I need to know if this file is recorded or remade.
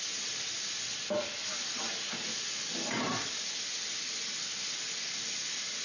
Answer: recorded